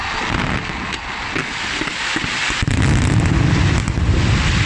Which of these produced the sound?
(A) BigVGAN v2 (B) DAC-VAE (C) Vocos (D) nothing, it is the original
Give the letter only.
D